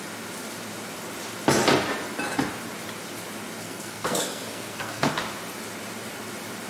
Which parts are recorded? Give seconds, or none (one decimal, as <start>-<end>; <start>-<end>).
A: 0.0-3.6; 5.1-6.7